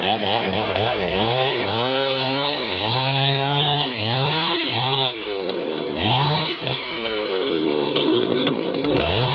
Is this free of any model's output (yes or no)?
no